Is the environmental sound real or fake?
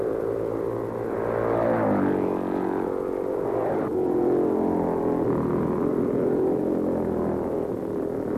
real